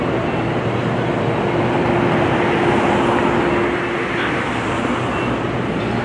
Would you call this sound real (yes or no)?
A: yes